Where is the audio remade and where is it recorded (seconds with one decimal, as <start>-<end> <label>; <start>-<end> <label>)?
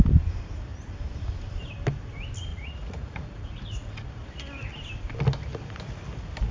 0.0-2.5 recorded; 2.5-4.1 remade; 4.1-6.5 recorded